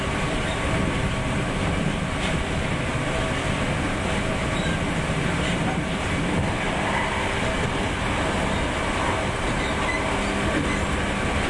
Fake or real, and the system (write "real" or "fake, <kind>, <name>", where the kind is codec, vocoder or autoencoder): real